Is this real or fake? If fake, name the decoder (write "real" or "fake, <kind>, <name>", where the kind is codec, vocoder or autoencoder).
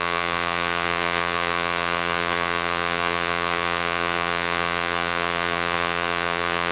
fake, vocoder, BigVGAN v2